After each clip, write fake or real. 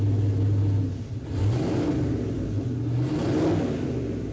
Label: real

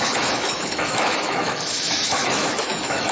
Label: fake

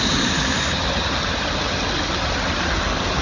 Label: real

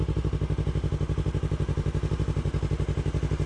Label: real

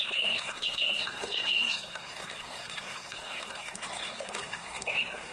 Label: fake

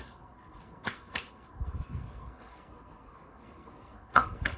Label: fake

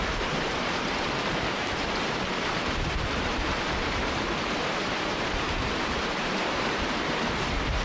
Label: fake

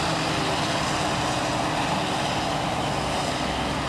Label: real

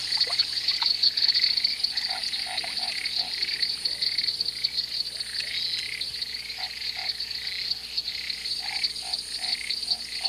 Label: real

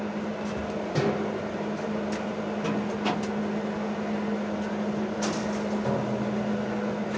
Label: real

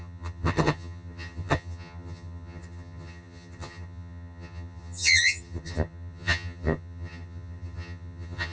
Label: fake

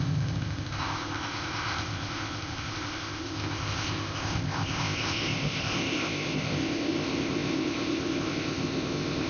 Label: fake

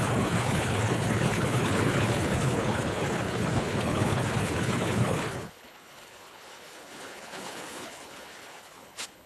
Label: fake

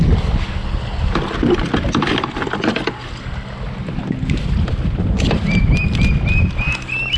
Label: real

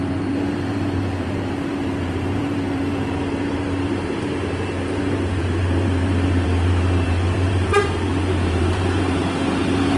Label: fake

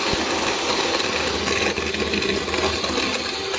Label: real